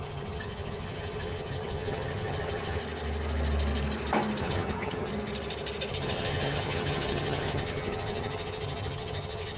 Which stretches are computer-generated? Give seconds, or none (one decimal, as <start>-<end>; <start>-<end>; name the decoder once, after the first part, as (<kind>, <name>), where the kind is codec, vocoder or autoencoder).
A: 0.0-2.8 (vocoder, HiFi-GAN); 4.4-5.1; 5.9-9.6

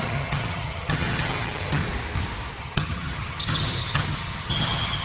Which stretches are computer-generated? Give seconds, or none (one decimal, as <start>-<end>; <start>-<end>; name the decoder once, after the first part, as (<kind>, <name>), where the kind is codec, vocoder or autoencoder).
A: 0.0-1.8 (vocoder, HiFi-GAN); 2.6-5.0

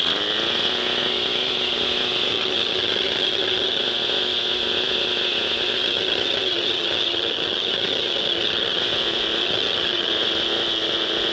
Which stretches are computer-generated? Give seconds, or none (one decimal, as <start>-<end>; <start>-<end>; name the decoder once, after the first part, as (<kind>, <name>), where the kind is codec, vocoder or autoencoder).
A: 2.3-3.8 (vocoder, HiFi-GAN); 5.8-8.8; 9.4-10.1

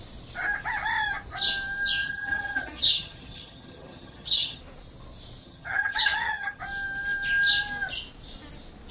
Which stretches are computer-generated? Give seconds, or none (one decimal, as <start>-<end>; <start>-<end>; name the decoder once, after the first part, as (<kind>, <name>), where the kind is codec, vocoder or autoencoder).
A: 2.0-4.6 (vocoder, HiFi-GAN); 5.4-6.6